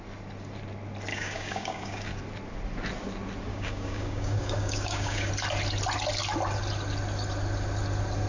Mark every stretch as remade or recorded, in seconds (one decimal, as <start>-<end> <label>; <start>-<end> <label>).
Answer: 0.0-1.1 recorded; 1.1-2.2 remade; 2.2-3.5 recorded; 3.5-5.3 remade; 5.3-8.3 recorded